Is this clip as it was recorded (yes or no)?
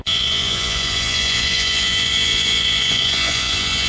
no